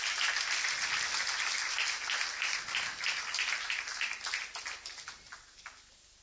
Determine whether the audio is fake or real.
real